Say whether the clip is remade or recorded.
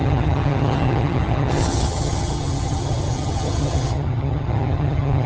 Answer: remade